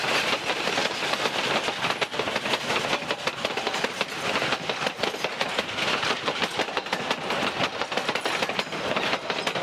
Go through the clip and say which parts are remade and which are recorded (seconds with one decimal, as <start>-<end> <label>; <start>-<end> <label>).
0.0-5.3 recorded; 5.3-6.4 remade; 6.4-9.6 recorded